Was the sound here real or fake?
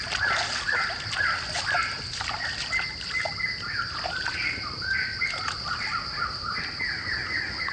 real